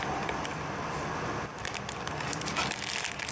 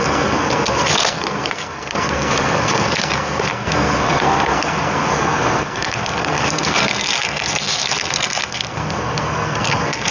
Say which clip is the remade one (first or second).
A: second